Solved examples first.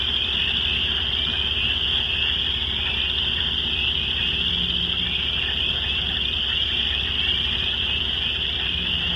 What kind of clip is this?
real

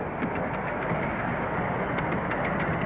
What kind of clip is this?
real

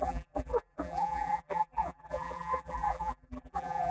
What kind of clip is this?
fake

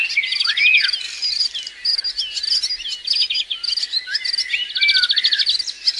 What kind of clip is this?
real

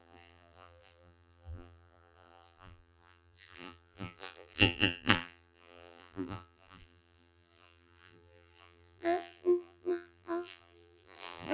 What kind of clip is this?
fake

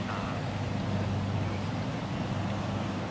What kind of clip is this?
real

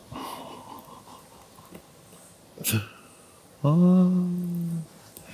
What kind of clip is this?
real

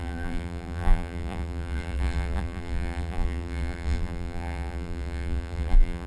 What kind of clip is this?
fake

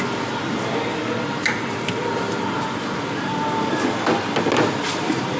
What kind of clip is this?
real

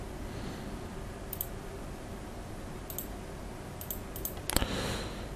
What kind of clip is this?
real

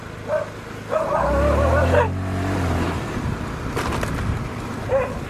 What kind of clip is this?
real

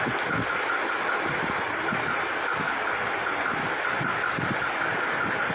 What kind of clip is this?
real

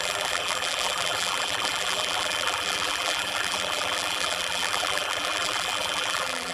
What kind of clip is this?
fake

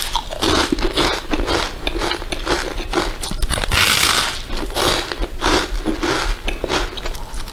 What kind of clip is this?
real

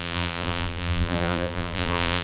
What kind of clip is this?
fake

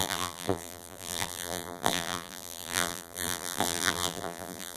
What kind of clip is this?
fake